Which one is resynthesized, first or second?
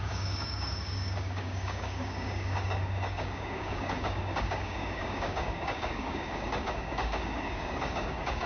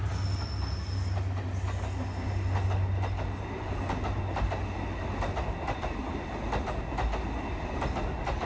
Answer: first